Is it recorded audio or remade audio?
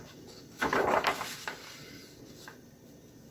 recorded